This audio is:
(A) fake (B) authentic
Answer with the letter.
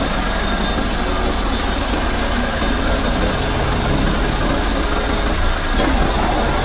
B